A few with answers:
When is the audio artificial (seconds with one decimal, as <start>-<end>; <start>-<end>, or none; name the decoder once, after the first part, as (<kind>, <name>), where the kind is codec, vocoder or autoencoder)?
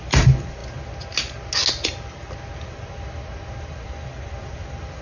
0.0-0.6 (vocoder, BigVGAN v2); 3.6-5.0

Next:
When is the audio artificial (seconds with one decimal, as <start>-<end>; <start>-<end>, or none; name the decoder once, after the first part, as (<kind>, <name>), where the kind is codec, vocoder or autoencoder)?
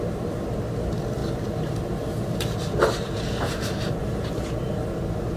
0.0-1.2 (vocoder, BigVGAN v2); 2.8-5.4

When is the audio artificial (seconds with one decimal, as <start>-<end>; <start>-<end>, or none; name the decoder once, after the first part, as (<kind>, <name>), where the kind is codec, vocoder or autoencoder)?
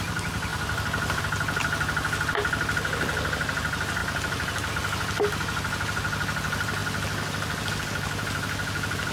0.5-1.2 (vocoder, BigVGAN v2)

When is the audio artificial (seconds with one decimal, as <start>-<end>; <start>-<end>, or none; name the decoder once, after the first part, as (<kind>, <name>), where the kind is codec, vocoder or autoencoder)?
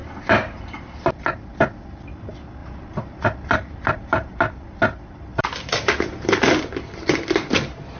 0.0-1.4 (vocoder, BigVGAN v2); 2.6-4.4; 5.3-6.3